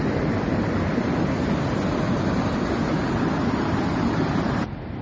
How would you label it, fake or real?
real